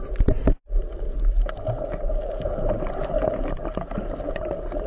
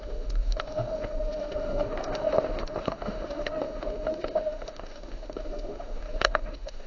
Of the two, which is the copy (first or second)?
second